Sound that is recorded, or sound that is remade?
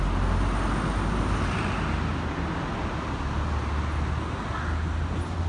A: recorded